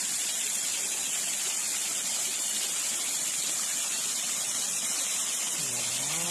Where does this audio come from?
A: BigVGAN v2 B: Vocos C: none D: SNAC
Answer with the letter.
C